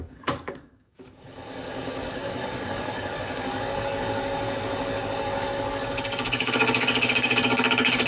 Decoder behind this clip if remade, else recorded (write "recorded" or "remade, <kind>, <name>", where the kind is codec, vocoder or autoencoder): remade, codec, DAC